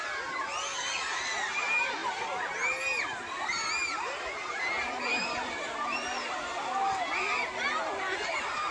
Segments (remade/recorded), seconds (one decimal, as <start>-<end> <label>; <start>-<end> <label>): 0.0-8.7 recorded